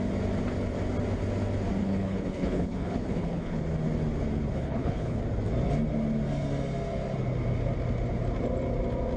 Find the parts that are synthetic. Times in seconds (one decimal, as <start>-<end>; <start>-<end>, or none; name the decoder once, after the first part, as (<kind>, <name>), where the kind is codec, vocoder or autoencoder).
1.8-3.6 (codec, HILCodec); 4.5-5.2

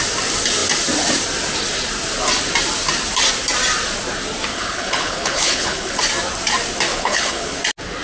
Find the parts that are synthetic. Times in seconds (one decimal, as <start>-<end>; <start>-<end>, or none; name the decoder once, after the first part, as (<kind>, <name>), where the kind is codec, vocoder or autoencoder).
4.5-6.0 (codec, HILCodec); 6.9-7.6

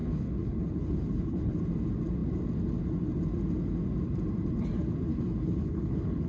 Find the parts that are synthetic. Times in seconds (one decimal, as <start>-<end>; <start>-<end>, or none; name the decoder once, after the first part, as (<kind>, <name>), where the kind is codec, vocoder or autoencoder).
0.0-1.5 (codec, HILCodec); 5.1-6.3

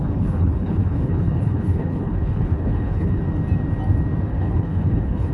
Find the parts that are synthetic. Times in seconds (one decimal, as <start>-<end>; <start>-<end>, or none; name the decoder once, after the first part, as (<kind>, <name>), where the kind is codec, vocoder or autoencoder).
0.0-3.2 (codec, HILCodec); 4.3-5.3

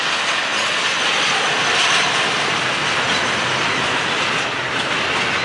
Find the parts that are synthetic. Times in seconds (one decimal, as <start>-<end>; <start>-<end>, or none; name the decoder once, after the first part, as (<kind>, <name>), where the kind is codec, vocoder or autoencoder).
none

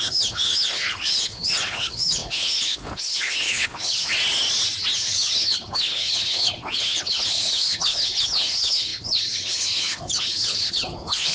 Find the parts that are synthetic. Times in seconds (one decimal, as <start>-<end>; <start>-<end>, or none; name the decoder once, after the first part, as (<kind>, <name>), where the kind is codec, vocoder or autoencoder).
0.0-4.1 (codec, HILCodec); 5.0-11.3